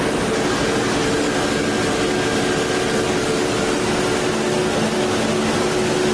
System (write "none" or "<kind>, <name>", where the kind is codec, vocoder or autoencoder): none